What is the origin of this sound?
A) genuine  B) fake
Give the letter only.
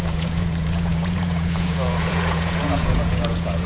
B